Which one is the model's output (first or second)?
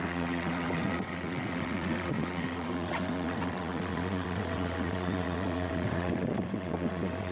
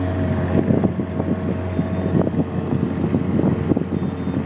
first